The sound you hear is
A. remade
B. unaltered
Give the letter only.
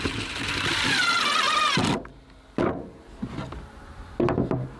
B